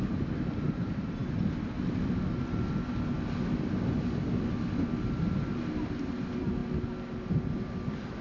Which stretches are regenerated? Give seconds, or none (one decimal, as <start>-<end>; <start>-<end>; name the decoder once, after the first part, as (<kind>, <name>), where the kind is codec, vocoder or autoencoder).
none